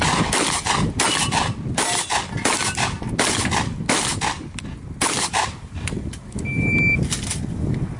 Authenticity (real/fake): real